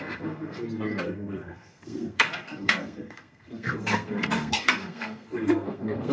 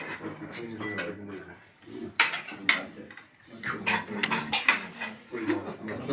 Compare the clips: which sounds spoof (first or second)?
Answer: first